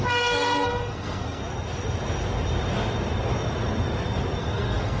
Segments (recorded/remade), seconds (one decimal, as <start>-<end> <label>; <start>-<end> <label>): 0.0-1.4 remade; 1.4-4.4 recorded; 4.4-5.0 remade